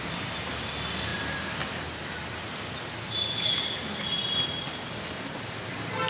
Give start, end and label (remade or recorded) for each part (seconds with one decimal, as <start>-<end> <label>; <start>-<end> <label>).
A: 0.0-6.1 recorded